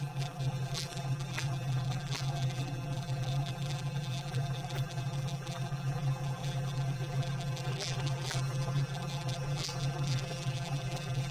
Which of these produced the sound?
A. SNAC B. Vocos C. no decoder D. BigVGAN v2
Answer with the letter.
D